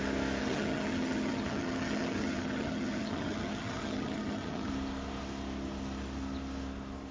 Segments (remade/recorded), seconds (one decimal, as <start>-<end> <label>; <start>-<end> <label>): 0.0-0.4 recorded; 0.4-4.7 remade; 4.7-7.1 recorded